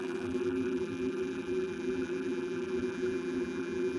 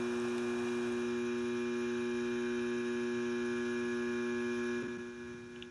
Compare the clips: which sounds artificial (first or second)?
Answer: first